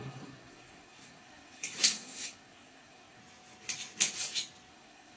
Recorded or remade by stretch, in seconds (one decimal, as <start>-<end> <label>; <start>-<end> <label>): 0.0-3.2 remade; 3.2-4.7 recorded; 4.7-5.2 remade